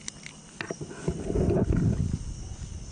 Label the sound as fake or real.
real